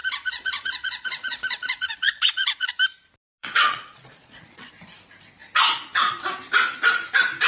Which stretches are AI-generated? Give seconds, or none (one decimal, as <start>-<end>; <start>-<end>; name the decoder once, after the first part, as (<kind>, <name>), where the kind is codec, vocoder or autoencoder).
0.0-2.7 (vocoder, Vocos); 3.4-4.7

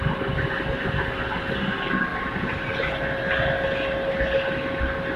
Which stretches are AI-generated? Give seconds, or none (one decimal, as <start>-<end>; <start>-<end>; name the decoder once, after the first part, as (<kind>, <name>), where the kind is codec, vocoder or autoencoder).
none

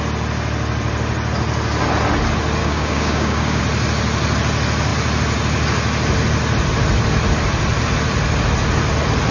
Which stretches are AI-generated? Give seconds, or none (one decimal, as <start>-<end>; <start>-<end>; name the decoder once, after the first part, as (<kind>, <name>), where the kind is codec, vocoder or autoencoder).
2.6-3.6 (codec, DAC)

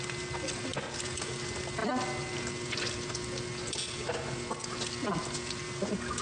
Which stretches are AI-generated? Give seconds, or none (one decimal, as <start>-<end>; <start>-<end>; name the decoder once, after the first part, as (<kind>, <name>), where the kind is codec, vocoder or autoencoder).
none

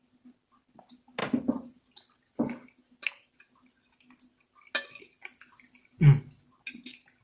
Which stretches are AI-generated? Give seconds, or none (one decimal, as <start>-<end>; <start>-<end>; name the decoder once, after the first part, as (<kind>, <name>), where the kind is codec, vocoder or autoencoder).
none

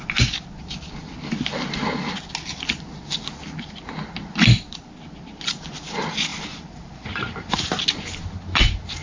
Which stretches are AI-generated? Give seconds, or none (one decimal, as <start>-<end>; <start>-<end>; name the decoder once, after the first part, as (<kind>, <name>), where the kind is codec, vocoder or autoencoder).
6.3-7.8 (vocoder, BigVGAN v2)

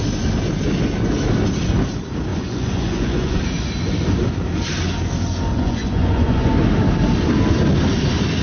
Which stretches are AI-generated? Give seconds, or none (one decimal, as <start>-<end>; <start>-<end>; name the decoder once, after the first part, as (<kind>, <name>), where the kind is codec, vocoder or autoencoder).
2.3-3.4 (vocoder, Vocos); 5.5-6.5